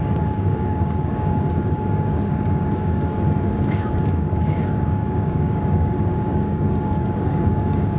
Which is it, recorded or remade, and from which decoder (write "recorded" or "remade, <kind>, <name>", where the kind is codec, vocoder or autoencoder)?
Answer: remade, codec, DAC